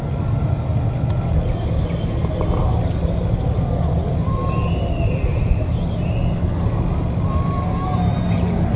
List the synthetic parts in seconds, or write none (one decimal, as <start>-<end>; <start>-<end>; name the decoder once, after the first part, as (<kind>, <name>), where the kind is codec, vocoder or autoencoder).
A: none

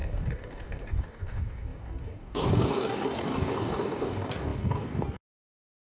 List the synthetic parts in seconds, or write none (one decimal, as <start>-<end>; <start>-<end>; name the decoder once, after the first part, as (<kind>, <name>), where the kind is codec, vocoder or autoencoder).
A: 0.0-6.0 (codec, DAC)

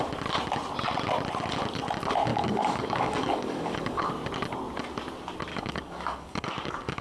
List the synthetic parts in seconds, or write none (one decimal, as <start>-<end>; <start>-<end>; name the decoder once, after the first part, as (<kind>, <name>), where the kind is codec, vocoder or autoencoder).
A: 2.3-4.1 (codec, DAC); 5.5-7.0